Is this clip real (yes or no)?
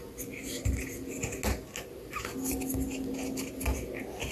yes